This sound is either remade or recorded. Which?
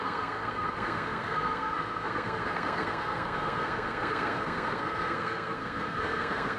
remade